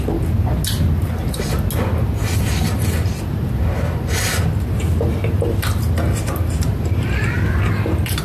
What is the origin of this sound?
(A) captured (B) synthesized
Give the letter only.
A